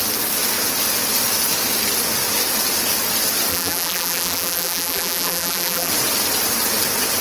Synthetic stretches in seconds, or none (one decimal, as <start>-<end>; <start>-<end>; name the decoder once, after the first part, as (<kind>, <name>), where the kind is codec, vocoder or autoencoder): 3.5-5.9 (vocoder, BigVGAN v2)